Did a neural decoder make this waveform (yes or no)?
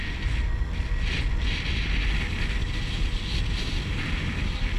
no